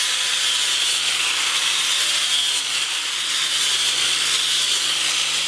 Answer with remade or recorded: recorded